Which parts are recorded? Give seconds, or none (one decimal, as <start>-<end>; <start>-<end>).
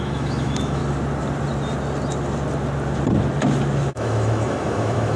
0.8-3.9